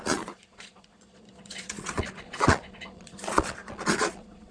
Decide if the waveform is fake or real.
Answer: fake